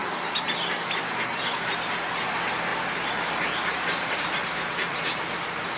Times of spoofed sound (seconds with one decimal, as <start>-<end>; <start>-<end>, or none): none